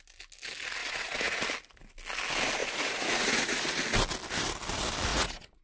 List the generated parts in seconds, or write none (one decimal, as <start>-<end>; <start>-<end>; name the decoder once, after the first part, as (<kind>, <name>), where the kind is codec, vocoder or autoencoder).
0.8-1.4 (vocoder, Vocos); 2.6-3.8; 5.1-5.6